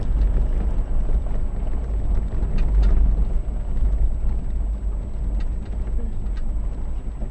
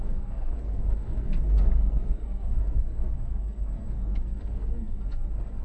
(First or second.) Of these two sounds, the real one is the first